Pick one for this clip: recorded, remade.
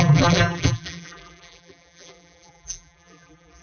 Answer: remade